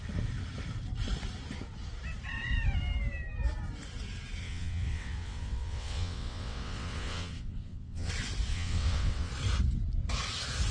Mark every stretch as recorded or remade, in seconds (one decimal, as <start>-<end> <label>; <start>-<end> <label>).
0.0-4.4 recorded; 4.4-8.1 remade; 8.1-8.5 recorded; 8.5-9.3 remade; 9.3-10.7 recorded

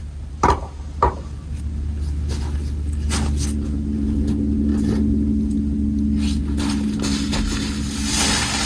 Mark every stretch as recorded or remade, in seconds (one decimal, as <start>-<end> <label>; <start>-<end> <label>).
0.0-8.7 recorded

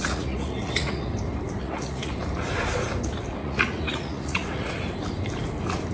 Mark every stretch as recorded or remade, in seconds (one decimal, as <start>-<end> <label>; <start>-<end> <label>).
0.0-1.1 remade; 1.1-1.6 recorded; 1.6-2.1 remade; 2.1-3.4 recorded; 3.4-4.7 remade; 4.7-5.9 recorded